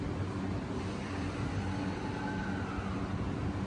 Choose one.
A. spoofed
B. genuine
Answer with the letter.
B